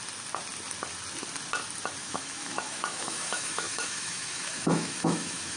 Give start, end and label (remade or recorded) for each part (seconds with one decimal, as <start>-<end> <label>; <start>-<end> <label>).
0.0-2.0 recorded; 2.0-5.6 remade